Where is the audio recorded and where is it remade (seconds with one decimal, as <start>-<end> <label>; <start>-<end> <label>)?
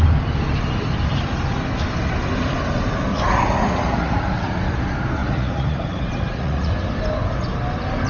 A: 0.0-3.1 recorded; 3.1-4.7 remade; 4.7-5.2 recorded; 5.2-6.7 remade; 6.7-8.1 recorded